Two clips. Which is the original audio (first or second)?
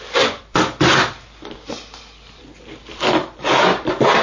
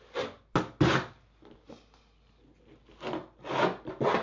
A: second